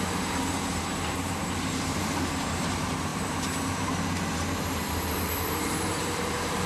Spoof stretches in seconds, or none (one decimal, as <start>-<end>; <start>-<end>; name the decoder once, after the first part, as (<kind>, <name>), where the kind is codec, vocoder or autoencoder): 0.0-6.7 (vocoder, BigVGAN v2)